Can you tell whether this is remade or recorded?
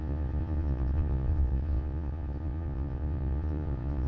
remade